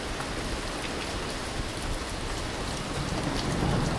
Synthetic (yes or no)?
no